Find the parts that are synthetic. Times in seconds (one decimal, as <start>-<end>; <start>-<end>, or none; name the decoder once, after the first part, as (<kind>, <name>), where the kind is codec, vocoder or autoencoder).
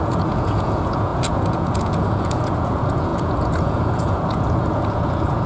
0.0-5.5 (vocoder, Vocos)